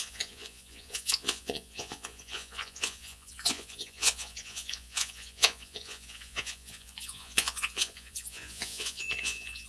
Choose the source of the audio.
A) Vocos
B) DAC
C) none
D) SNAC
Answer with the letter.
A